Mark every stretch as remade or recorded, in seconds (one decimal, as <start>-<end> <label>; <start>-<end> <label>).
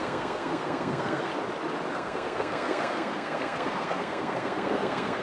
0.0-1.3 remade; 1.3-1.9 recorded; 1.9-5.2 remade